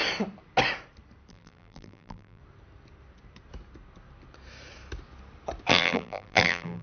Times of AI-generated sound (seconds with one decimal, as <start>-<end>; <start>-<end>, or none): 1.3-2.4; 5.7-6.8